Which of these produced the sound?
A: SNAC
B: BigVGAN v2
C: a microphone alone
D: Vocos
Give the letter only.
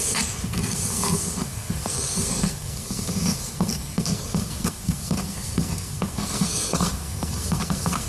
A